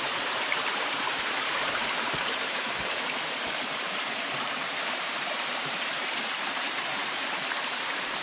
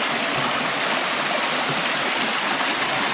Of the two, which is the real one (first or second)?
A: second